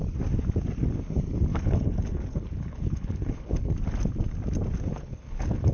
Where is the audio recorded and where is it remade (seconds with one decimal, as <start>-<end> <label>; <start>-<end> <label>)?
0.0-1.5 recorded; 1.5-3.7 remade; 3.7-4.9 recorded; 4.9-5.7 remade